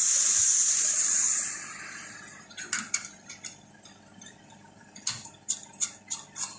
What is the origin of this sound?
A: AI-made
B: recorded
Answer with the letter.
B